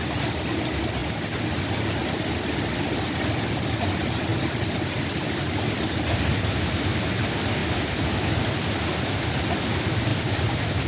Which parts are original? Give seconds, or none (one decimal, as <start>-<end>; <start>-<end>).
0.0-4.3; 7.0-7.6; 9.4-10.1